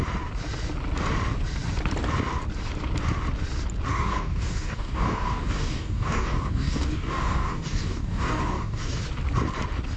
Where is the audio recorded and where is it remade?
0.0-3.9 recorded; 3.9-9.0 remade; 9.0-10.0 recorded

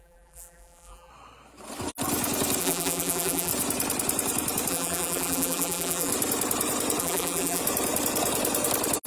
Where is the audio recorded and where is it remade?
0.0-1.1 remade; 1.1-2.6 recorded; 2.6-3.5 remade; 3.5-4.7 recorded; 4.7-6.1 remade; 6.1-7.0 recorded; 7.0-7.6 remade; 7.6-9.1 recorded

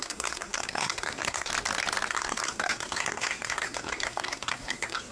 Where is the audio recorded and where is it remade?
0.0-1.5 remade; 1.5-2.1 recorded; 2.1-5.1 remade

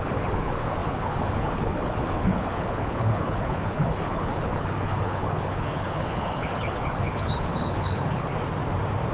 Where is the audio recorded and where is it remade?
0.0-8.3 remade; 8.3-9.1 recorded